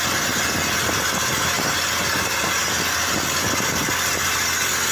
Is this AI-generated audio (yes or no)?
no